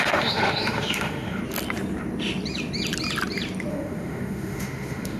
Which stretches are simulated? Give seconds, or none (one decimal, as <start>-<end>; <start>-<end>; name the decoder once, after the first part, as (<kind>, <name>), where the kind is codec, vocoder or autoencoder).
0.0-1.4 (autoencoder, DAC-VAE); 3.7-5.2